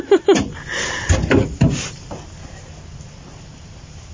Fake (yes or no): no